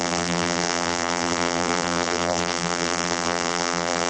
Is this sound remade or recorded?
remade